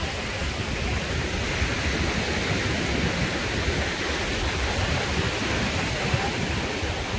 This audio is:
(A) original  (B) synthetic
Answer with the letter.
A